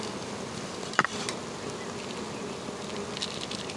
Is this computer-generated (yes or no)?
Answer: no